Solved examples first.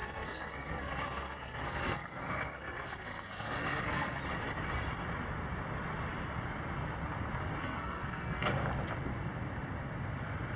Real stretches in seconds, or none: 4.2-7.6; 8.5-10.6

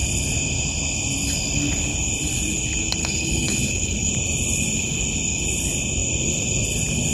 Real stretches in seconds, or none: 0.0-3.0; 4.1-7.1

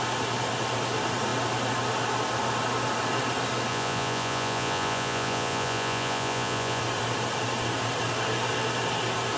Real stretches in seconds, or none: 0.0-3.7; 6.8-9.4

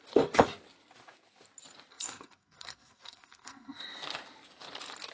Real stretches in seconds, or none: 0.0-1.9; 3.8-5.1

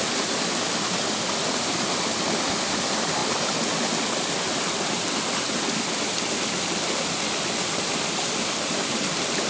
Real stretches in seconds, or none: 0.0-9.5

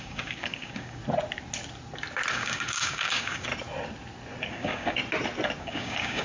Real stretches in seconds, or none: 1.0-2.3; 3.5-4.5; 5.0-5.6